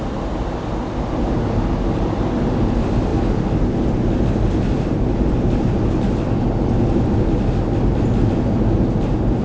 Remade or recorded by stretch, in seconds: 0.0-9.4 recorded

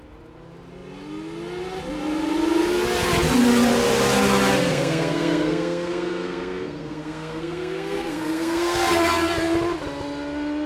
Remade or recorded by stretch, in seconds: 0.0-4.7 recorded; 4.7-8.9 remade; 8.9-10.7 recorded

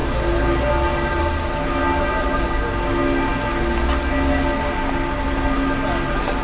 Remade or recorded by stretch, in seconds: 0.0-6.4 recorded

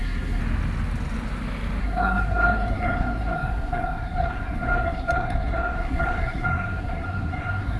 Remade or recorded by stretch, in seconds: 0.0-0.4 remade; 0.4-1.8 recorded; 1.8-7.8 remade

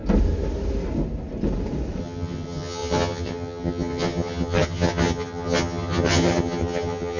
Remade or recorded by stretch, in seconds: 0.0-2.0 recorded; 2.0-7.2 remade

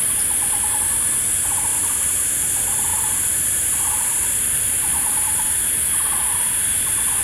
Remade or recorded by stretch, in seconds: 0.0-1.7 recorded; 1.7-2.3 remade; 2.3-2.9 recorded; 2.9-6.4 remade; 6.4-7.2 recorded

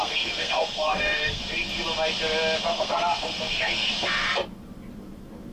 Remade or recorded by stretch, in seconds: 0.0-1.4 remade; 1.4-2.7 recorded; 2.7-3.9 remade; 3.9-5.5 recorded

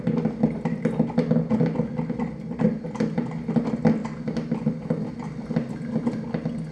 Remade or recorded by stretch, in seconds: 0.0-6.7 recorded